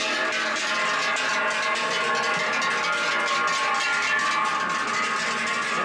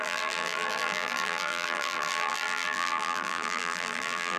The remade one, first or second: second